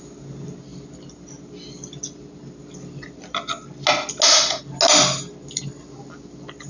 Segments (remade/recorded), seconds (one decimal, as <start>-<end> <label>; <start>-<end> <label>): 0.0-6.7 recorded